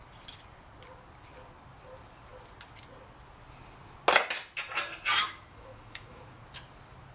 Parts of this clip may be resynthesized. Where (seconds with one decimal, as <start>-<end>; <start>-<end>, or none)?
5.2-6.2